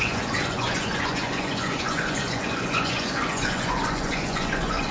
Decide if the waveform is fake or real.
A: fake